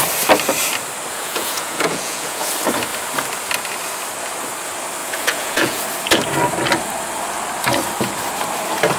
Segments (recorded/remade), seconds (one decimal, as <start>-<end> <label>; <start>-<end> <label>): 0.0-1.1 recorded; 1.1-2.5 remade; 2.5-5.0 recorded; 5.0-5.8 remade; 5.8-9.0 recorded